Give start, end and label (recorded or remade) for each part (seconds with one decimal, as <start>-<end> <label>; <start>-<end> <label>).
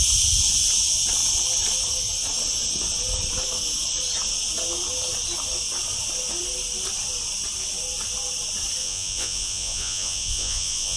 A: 0.0-8.8 recorded; 8.8-11.0 remade